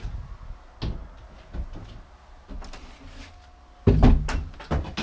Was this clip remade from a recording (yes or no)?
no